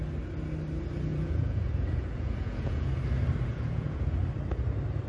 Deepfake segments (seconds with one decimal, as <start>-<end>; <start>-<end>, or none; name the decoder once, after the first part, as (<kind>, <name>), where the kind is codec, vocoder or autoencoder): 1.1-2.9 (vocoder, Vocos); 3.5-4.2

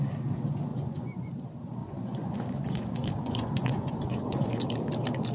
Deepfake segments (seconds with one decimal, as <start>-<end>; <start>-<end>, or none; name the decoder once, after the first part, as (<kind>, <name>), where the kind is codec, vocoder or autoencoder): 0.7-1.3 (vocoder, Vocos); 1.8-4.6